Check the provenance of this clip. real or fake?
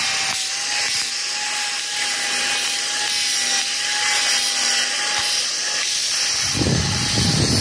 real